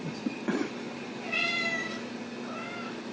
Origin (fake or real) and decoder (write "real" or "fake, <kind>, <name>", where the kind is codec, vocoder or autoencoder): real